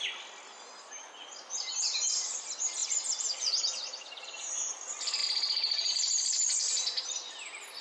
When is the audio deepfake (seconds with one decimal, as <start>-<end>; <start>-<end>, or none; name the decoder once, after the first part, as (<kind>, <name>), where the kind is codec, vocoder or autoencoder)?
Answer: 2.8-4.5 (vocoder, BigVGAN v2)